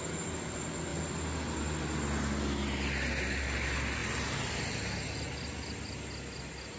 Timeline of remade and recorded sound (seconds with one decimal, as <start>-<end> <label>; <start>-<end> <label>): 0.0-6.8 recorded